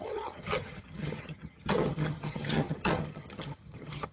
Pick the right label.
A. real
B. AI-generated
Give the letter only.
B